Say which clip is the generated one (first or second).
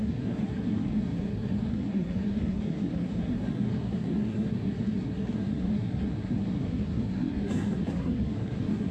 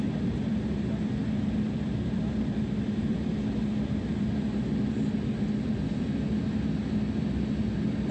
first